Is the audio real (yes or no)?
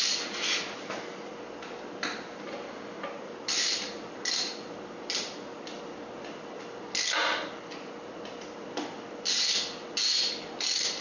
yes